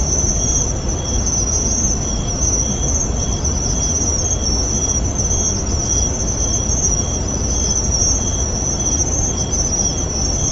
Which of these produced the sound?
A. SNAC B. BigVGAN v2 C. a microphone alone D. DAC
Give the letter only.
C